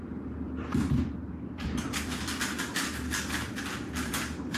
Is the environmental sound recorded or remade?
remade